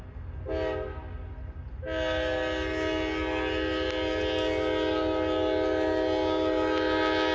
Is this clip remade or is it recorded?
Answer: recorded